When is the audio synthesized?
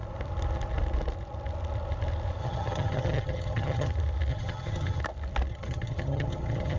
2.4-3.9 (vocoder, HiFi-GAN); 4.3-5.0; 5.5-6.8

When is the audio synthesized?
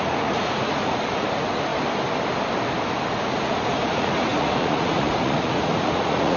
0.0-1.7 (vocoder, Vocos); 3.1-6.4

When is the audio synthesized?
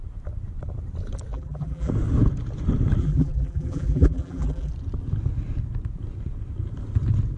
1.3-1.9 (vocoder, BigVGAN v2); 3.0-4.7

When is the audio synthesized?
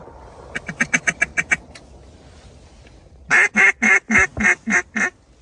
none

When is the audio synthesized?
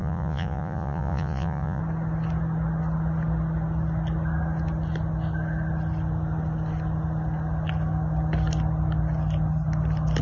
0.0-1.8 (vocoder, Vocos)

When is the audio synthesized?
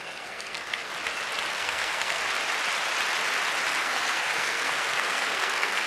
0.0-0.9 (codec, SNAC); 1.5-2.2; 3.7-5.9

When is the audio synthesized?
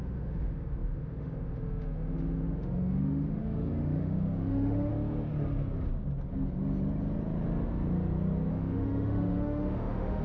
0.0-4.9 (autoencoder, DAC-VAE); 8.5-10.2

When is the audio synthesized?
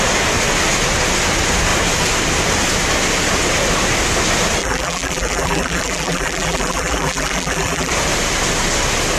4.6-7.9 (vocoder, BigVGAN v2)